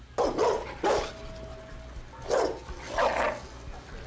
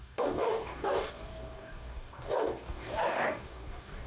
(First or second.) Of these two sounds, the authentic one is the first